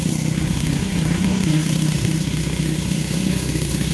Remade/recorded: remade